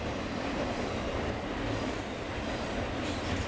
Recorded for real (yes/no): yes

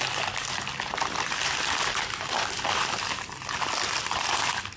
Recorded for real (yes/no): no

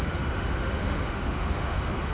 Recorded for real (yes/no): no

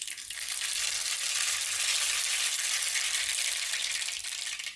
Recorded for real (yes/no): yes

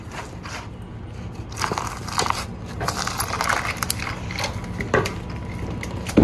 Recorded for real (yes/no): yes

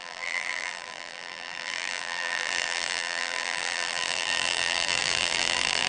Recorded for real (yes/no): no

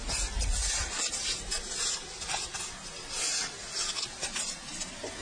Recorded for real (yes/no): yes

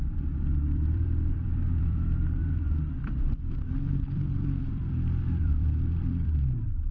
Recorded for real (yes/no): no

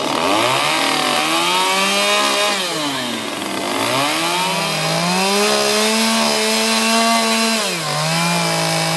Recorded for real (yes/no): yes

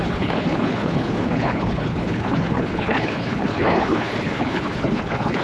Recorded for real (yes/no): no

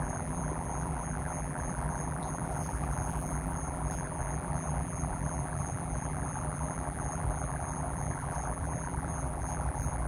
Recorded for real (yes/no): no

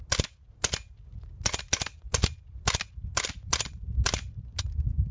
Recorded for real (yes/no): yes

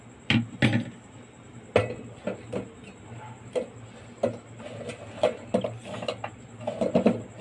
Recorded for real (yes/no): yes